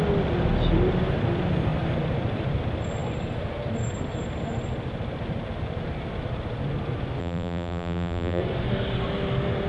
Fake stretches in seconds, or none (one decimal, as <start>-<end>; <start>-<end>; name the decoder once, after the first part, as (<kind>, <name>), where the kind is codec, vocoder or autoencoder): 7.2-8.4 (vocoder, BigVGAN v2)